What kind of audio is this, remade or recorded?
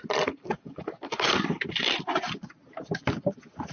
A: recorded